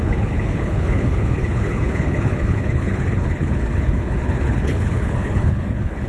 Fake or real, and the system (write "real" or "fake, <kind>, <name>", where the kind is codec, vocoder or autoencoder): fake, codec, HILCodec